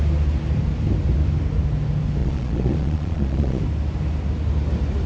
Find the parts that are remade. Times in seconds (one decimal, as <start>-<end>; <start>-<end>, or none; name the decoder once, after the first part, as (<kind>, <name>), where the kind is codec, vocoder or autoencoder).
2.2-3.6 (vocoder, Vocos)